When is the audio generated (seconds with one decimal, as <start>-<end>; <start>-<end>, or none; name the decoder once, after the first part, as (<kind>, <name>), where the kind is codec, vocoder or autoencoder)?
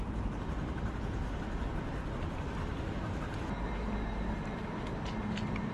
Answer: 0.0-1.2 (vocoder, BigVGAN v2); 3.7-5.7